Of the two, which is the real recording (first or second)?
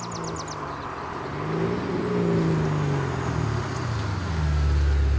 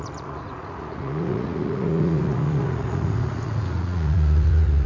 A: first